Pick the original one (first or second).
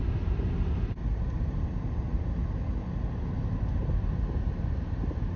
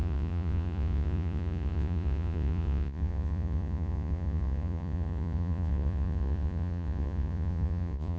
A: first